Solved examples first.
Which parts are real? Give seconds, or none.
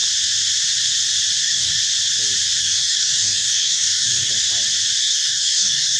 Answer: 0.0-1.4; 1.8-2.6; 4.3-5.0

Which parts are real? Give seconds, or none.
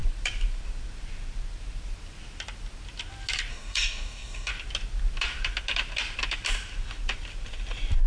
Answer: 0.0-3.5; 4.5-8.1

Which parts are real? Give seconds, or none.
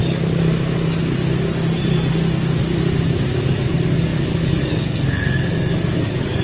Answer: 0.0-3.4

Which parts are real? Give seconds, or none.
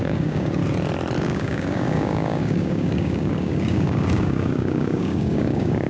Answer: 0.6-1.2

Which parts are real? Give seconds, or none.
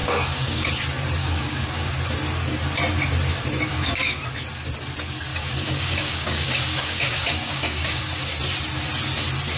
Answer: 0.7-1.2; 1.9-3.7; 4.3-5.3; 8.0-9.6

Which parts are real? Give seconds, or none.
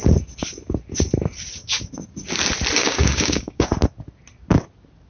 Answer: 0.0-2.8; 3.7-5.1